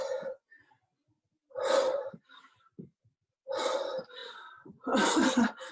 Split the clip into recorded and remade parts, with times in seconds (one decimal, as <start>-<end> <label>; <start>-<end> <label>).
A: 0.0-5.7 recorded